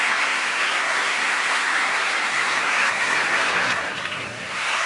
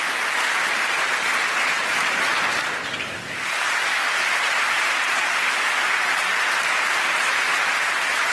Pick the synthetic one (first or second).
first